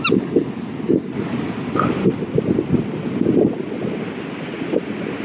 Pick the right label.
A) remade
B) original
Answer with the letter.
B